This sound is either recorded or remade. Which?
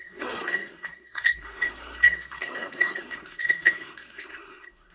remade